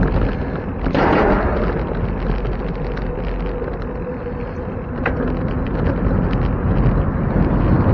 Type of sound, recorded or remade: recorded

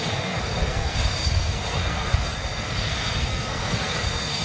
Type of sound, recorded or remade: remade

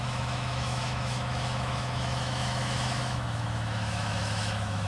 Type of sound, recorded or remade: remade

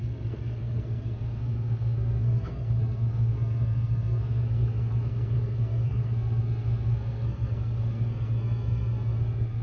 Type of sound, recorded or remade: remade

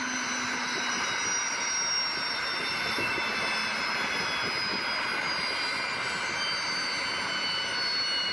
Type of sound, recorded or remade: recorded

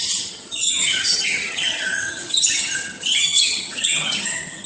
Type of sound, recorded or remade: remade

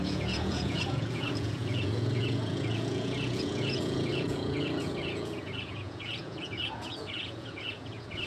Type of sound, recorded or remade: remade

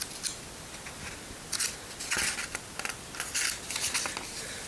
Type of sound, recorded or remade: recorded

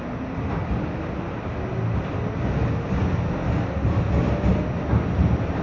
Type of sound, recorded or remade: recorded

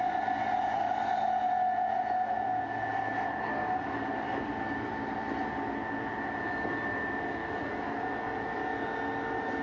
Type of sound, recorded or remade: recorded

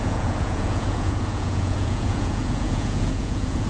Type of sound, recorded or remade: remade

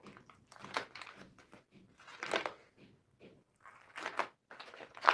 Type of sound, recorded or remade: recorded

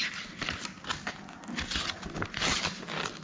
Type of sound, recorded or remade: recorded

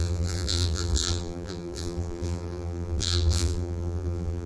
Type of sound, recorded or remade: remade